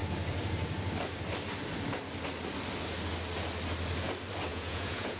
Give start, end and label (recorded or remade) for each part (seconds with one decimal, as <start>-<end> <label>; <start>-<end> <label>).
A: 0.0-4.5 recorded; 4.5-5.2 remade